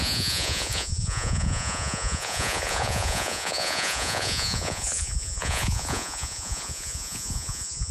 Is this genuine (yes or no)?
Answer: no